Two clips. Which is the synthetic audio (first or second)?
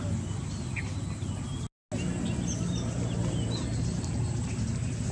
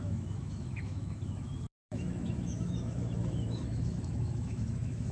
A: second